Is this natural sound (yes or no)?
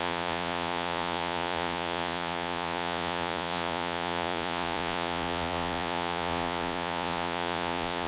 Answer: no